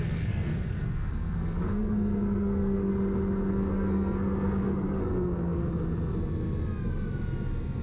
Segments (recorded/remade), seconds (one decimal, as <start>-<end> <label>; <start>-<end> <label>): 0.0-2.9 remade; 2.9-3.5 recorded; 3.5-5.6 remade; 5.6-7.8 recorded